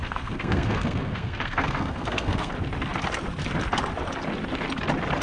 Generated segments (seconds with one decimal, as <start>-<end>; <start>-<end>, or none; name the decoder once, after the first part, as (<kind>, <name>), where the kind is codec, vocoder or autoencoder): 0.0-2.5 (codec, SNAC)